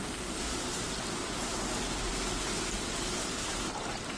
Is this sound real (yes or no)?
yes